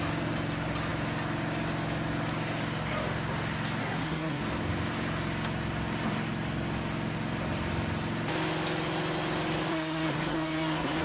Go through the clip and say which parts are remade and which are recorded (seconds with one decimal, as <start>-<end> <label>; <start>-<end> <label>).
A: 0.0-3.8 recorded; 3.8-4.4 remade; 4.4-9.7 recorded; 9.7-11.0 remade